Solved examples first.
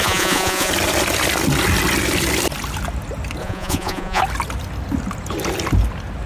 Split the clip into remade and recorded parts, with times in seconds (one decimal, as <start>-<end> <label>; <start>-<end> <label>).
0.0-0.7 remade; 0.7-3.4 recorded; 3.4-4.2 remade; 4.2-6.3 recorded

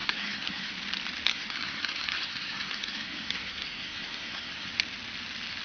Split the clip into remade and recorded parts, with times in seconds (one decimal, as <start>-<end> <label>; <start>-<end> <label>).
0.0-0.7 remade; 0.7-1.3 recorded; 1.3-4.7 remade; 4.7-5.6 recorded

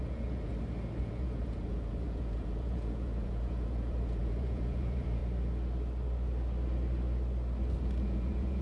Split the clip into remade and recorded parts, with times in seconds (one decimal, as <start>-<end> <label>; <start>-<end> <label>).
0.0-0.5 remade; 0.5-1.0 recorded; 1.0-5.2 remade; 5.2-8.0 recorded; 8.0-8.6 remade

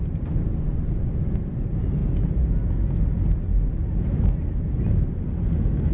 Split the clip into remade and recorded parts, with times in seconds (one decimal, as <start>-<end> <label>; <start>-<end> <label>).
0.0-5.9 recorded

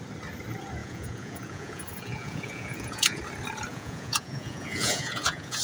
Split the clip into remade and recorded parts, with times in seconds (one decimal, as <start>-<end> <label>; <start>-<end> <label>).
0.0-0.8 recorded; 0.8-3.2 remade; 3.2-3.7 recorded; 3.7-5.6 remade